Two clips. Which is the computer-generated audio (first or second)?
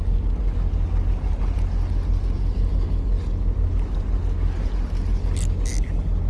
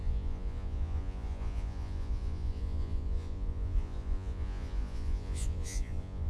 second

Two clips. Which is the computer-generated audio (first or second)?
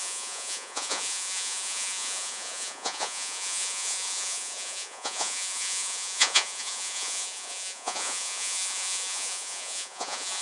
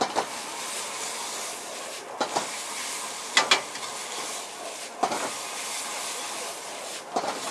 first